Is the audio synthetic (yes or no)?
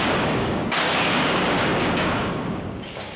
yes